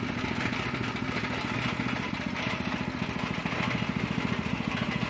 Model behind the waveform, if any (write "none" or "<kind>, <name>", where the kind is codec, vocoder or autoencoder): none